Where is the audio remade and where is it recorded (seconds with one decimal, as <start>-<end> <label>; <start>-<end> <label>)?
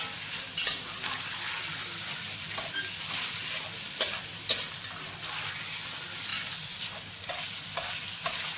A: 0.0-8.6 recorded